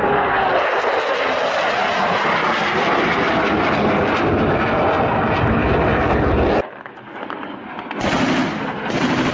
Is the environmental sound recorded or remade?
recorded